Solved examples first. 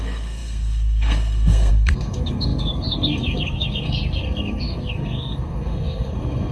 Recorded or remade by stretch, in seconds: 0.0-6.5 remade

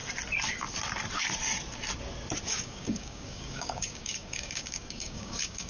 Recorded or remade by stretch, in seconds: 0.0-2.5 recorded; 2.5-5.7 remade

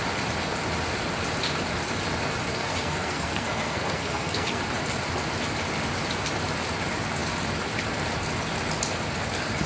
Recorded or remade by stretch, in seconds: 0.0-2.5 recorded; 2.5-4.6 remade; 4.6-9.7 recorded